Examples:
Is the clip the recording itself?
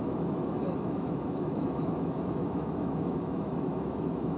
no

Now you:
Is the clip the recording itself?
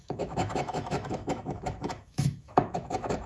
no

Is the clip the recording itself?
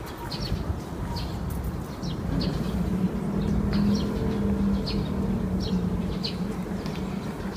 yes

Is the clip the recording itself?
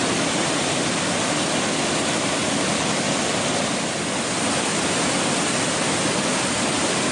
yes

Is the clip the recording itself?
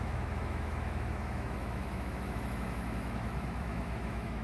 no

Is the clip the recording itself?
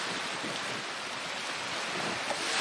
yes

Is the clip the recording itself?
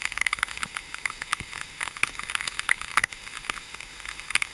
no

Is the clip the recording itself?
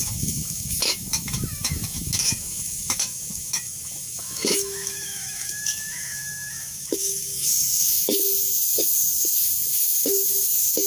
no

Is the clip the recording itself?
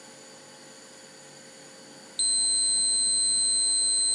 yes